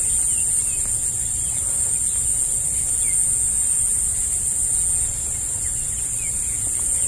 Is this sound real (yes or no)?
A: yes